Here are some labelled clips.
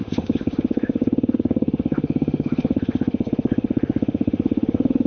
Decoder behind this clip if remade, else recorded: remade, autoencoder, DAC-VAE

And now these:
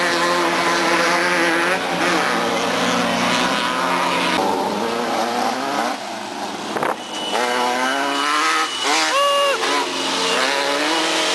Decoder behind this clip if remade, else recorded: recorded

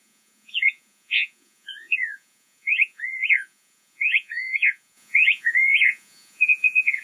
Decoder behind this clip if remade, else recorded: remade, vocoder, Vocos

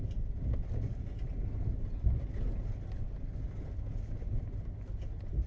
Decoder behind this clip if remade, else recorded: recorded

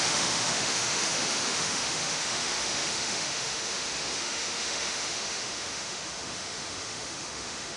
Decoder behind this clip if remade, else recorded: remade, autoencoder, DAC-VAE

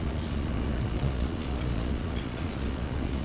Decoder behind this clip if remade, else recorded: remade, vocoder, Vocos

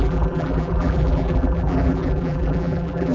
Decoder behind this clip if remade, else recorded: remade, vocoder, BigVGAN v2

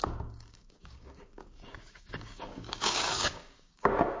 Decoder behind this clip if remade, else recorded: remade, codec, DAC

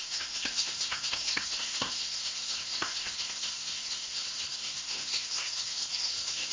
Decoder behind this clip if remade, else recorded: remade, codec, SNAC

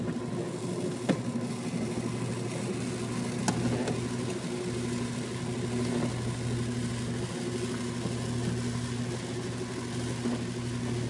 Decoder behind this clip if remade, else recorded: recorded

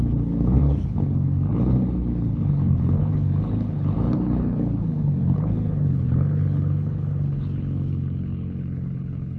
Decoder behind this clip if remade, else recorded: remade, codec, HILCodec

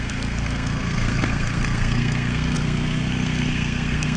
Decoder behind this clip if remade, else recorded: remade, codec, SNAC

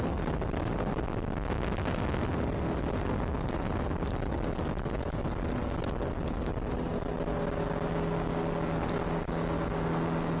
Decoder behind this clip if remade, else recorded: recorded